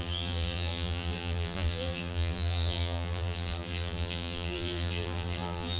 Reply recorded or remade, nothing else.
remade